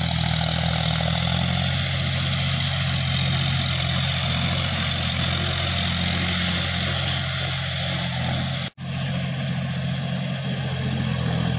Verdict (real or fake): real